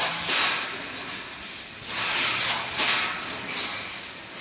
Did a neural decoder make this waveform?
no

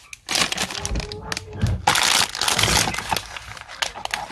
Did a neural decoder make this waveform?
no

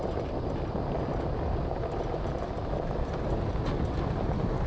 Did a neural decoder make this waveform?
no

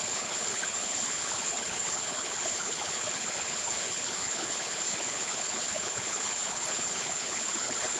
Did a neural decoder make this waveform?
yes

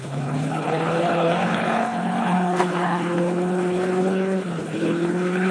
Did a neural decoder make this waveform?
yes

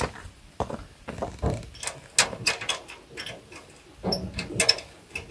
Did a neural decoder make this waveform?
no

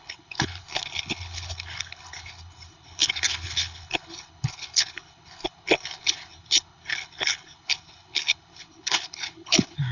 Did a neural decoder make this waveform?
yes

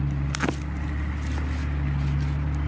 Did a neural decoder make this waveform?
no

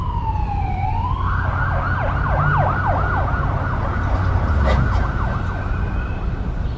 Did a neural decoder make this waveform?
no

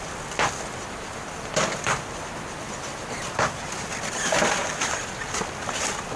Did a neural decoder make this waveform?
no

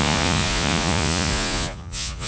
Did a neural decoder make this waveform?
yes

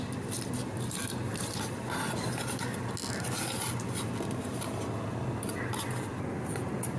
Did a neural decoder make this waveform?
no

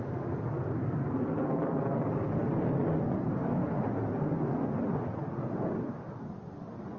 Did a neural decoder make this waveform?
no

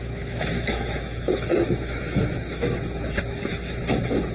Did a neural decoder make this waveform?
yes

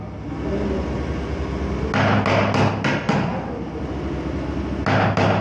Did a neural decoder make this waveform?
no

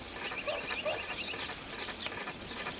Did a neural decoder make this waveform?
no